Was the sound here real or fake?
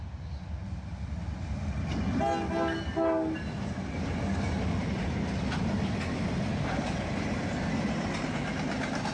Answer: real